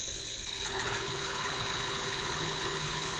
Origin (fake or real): fake